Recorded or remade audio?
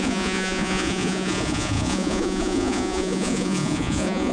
remade